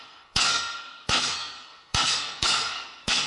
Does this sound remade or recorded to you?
remade